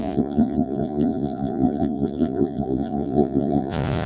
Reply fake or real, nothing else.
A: fake